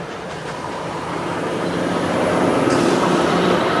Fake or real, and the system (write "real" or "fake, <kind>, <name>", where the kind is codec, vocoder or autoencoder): fake, vocoder, BigVGAN v2